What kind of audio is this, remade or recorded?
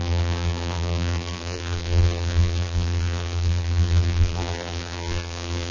remade